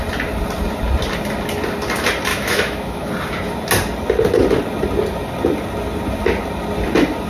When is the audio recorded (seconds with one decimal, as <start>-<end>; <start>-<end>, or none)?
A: 0.0-2.3; 3.1-7.3